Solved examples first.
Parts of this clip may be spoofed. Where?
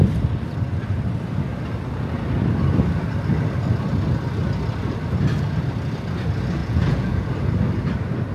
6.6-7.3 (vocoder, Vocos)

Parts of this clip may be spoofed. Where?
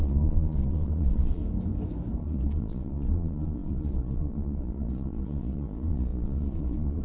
0.0-1.4 (vocoder, Vocos); 2.2-7.0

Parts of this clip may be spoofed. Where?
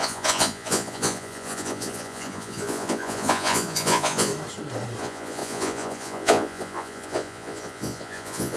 0.0-4.3 (vocoder, Vocos); 5.0-8.6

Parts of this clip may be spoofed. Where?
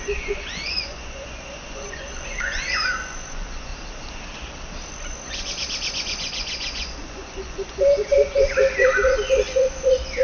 0.0-3.7 (vocoder, Vocos); 4.9-10.2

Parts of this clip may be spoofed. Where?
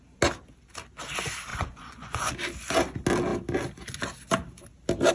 1.5-2.3 (vocoder, Vocos)